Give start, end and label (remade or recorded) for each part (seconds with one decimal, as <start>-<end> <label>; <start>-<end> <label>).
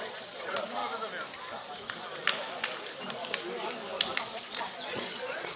0.0-0.8 remade; 0.8-4.2 recorded; 4.2-5.6 remade